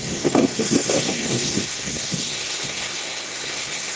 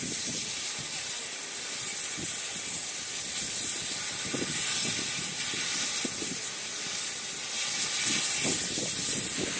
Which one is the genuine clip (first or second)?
second